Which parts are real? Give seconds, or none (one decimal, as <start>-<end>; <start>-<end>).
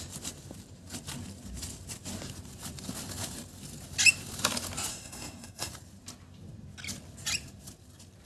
0.0-4.9; 5.7-8.3